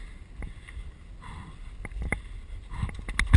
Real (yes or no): yes